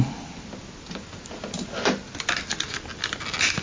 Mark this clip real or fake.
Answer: real